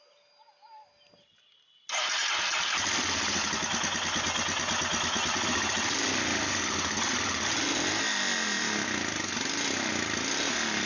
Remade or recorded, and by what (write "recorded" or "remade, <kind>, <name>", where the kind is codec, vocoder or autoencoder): recorded